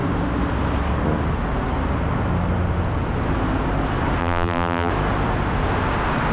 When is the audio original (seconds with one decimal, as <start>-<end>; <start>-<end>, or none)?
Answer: 0.0-4.2; 4.9-6.3